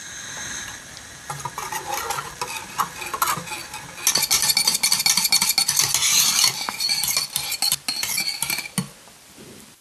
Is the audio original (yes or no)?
yes